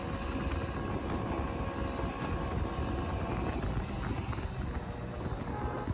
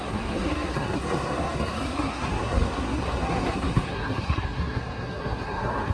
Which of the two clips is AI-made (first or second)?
second